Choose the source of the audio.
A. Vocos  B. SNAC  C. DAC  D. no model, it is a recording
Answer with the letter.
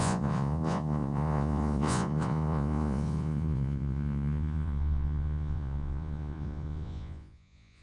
A